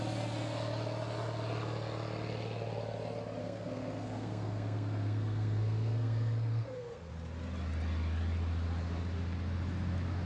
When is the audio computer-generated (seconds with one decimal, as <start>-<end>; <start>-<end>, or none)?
3.4-7.1